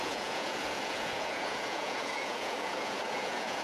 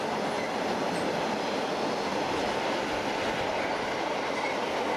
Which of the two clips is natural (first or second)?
second